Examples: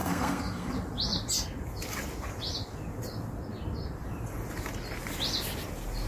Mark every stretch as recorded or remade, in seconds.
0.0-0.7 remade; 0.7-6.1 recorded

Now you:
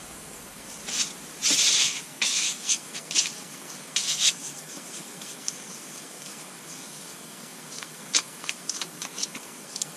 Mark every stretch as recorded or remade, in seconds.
0.0-0.8 remade; 0.8-1.8 recorded; 1.8-10.0 remade

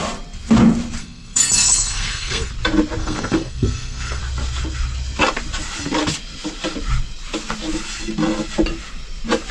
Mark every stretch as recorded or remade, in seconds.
0.0-1.0 recorded; 1.0-2.5 remade; 2.5-3.0 recorded; 3.0-4.2 remade; 4.2-9.5 recorded